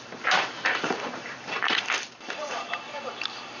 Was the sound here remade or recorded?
remade